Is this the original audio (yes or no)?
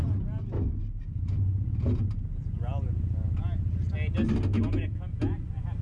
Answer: yes